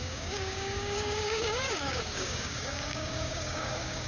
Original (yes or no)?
no